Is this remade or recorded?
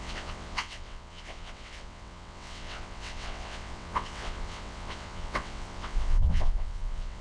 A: remade